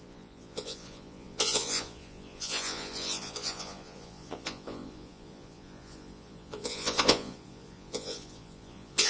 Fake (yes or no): yes